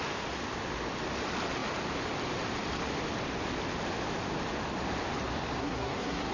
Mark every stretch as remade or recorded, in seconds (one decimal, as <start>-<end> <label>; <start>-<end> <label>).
0.0-5.6 recorded; 5.6-6.3 remade